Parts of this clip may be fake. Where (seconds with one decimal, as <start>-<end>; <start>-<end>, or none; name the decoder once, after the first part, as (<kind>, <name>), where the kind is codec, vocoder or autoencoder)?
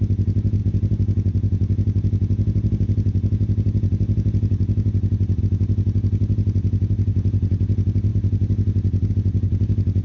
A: none